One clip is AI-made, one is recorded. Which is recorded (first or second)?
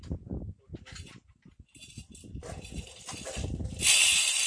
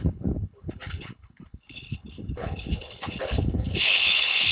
first